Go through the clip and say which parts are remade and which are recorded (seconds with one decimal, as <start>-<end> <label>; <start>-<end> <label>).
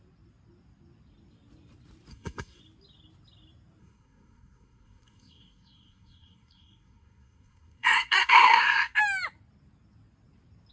0.0-2.1 recorded; 2.1-2.6 remade; 2.6-3.8 recorded; 3.8-9.0 remade; 9.0-10.7 recorded